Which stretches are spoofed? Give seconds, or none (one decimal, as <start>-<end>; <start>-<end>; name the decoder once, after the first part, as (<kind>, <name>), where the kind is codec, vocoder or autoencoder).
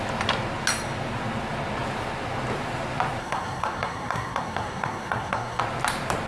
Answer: 3.2-5.6 (codec, SNAC)